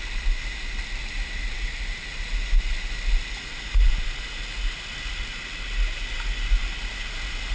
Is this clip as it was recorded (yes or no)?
yes